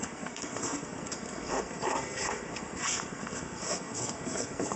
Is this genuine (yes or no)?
no